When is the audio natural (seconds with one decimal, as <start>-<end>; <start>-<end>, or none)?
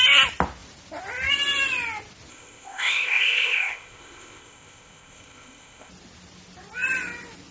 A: 0.0-2.3; 5.9-7.5